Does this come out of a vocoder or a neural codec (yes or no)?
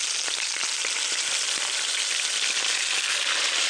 no